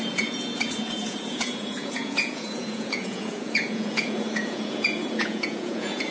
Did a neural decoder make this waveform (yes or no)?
yes